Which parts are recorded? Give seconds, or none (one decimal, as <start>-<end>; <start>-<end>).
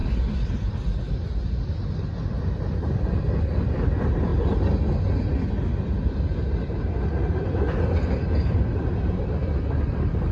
0.0-1.9; 4.3-6.8